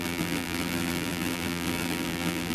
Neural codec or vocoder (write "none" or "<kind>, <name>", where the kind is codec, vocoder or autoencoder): vocoder, BigVGAN v2